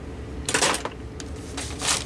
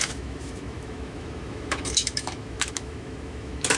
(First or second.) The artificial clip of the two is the second